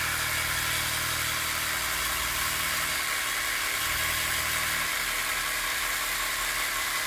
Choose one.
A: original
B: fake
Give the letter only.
A